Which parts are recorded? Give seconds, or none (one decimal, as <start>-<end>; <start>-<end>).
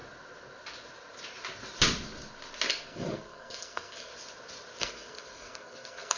0.0-2.7; 4.1-4.8